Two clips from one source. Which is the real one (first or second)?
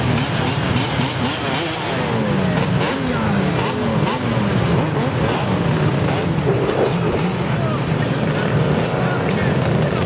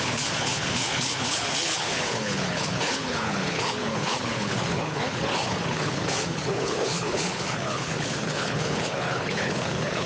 first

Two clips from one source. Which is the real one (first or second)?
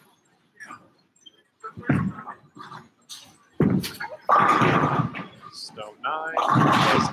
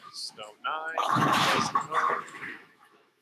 first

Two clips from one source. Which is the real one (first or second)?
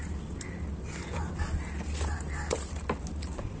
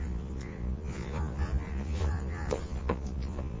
first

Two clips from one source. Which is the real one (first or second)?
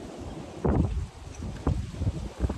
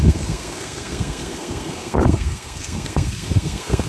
first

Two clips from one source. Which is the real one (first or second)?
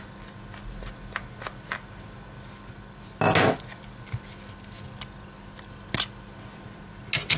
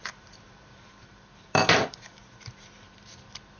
first